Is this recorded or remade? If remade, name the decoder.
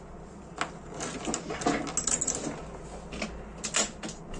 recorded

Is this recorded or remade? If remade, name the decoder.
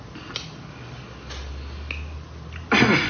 recorded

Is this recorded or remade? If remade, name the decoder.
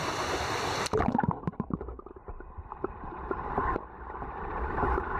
remade, vocoder, BigVGAN v2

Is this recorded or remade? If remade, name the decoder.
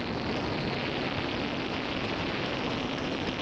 recorded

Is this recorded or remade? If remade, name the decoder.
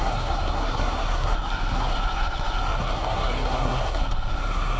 remade, codec, SNAC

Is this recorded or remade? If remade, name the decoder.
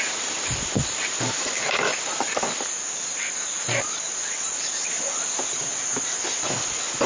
recorded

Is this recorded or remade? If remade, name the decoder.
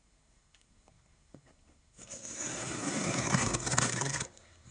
remade, codec, SNAC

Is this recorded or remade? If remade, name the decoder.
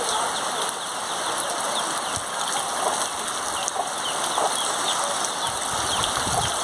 recorded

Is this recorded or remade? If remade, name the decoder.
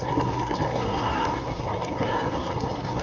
remade, codec, SNAC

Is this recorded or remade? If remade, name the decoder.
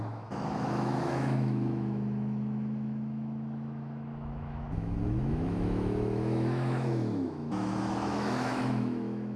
remade, autoencoder, DAC-VAE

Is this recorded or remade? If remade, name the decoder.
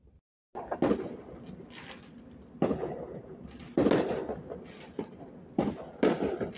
recorded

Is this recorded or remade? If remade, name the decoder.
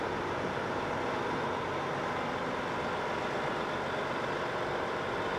recorded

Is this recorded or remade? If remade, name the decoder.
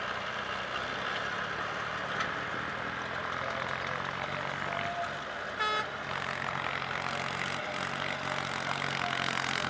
recorded